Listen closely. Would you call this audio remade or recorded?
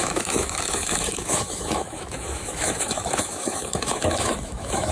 remade